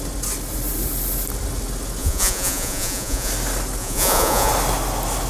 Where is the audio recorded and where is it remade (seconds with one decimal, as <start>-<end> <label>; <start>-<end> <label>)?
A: 0.0-2.0 recorded; 2.0-3.3 remade; 3.3-3.8 recorded; 3.8-4.5 remade; 4.5-5.3 recorded